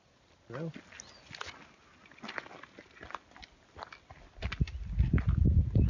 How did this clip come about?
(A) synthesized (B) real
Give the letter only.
B